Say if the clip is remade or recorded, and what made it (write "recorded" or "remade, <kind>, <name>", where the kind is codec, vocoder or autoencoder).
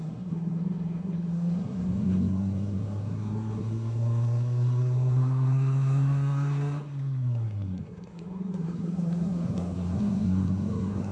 remade, codec, SNAC